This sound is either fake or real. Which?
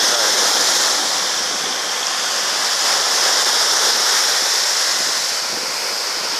real